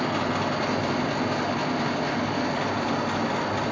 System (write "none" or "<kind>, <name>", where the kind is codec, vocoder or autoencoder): none